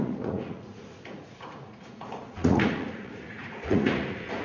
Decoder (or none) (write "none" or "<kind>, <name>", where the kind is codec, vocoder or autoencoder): vocoder, Vocos